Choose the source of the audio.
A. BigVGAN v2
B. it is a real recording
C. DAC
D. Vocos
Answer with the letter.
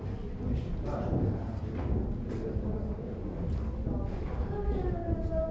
B